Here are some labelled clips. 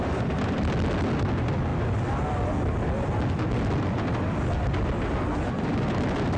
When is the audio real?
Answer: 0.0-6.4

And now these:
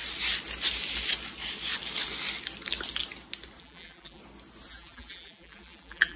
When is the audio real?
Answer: 0.0-3.6; 4.2-4.7

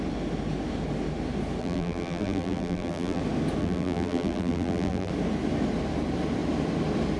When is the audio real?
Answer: 0.0-1.6; 3.2-3.6; 5.1-7.2

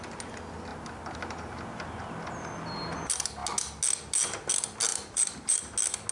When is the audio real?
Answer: 0.0-4.9; 5.6-6.1

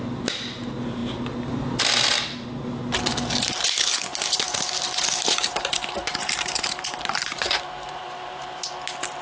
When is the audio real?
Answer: 0.0-4.1; 8.6-9.2

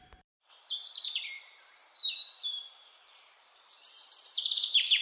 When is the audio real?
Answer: none

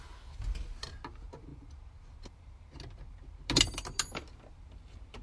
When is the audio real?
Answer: 0.0-5.2

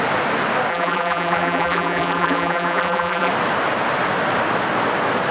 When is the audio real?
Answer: 0.0-0.7; 3.3-5.3